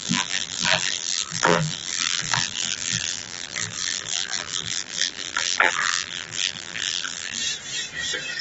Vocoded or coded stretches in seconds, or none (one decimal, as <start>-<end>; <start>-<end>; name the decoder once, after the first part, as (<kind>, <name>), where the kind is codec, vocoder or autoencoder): 0.0-7.4 (vocoder, BigVGAN v2)